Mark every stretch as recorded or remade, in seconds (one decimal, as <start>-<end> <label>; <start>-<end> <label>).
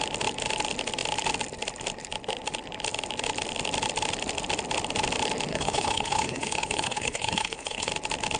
0.0-5.5 recorded; 5.5-7.9 remade; 7.9-8.4 recorded